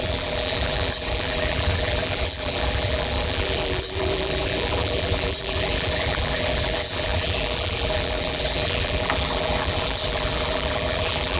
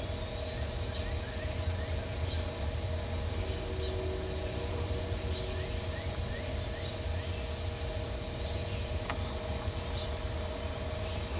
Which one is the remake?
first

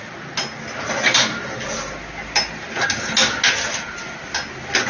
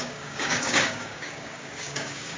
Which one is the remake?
second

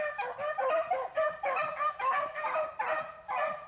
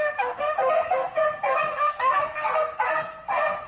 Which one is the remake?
second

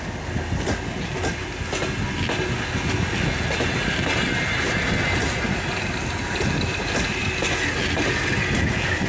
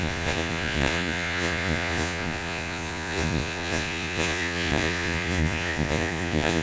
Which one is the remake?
second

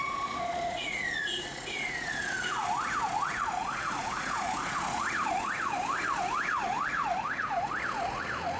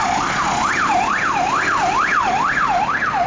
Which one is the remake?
first